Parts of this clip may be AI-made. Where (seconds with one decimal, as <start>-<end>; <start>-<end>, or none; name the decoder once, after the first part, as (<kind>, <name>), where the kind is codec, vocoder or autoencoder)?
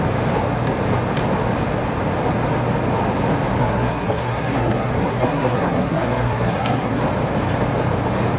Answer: 3.6-7.0 (codec, SNAC)